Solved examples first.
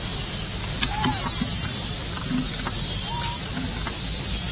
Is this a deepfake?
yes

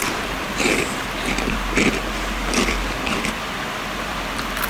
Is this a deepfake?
yes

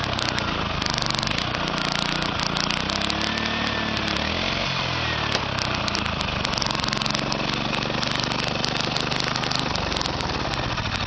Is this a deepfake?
no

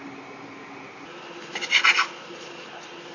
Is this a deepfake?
no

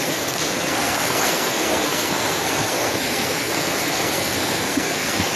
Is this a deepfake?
yes